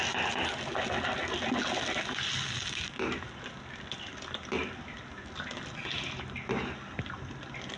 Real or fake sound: real